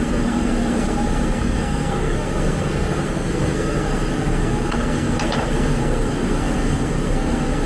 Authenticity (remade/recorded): remade